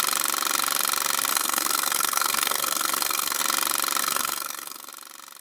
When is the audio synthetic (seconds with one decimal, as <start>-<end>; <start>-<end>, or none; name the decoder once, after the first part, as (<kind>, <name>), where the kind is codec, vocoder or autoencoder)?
1.3-3.4 (codec, SNAC); 4.0-4.9